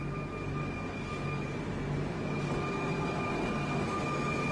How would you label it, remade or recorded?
recorded